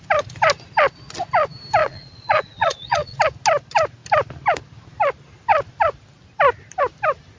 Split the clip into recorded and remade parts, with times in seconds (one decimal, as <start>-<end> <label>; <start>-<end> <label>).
0.0-1.8 recorded; 1.8-3.2 remade; 3.2-7.4 recorded